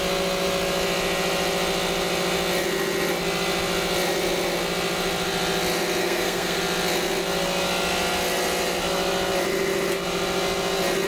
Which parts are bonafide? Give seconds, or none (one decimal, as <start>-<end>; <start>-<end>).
0.0-6.0; 6.6-11.1